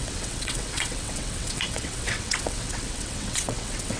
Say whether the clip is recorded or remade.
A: remade